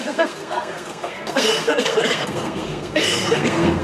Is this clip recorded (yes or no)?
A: no